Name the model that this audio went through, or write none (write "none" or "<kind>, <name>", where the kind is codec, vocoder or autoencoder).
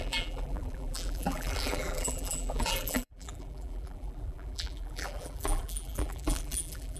vocoder, BigVGAN v2